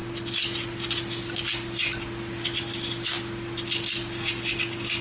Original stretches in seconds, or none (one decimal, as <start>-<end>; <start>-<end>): 0.0-5.0